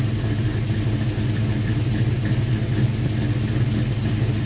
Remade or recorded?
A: recorded